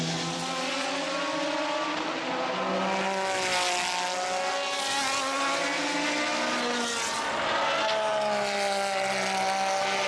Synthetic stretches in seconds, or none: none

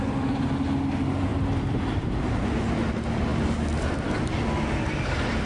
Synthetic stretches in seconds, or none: none

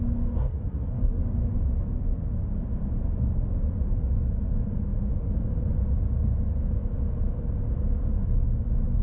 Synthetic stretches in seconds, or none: 0.4-1.2 (codec, SNAC)

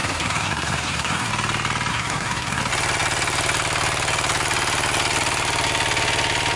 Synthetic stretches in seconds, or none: 0.0-1.3 (codec, SNAC); 1.9-2.6

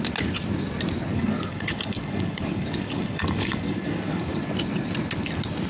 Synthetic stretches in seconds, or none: 1.1-4.5 (codec, DAC)

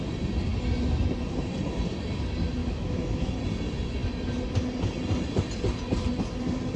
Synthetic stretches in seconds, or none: 2.6-3.3 (autoencoder, DAC-VAE)

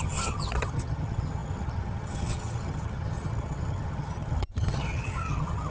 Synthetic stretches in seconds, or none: 0.0-5.7 (vocoder, HiFi-GAN)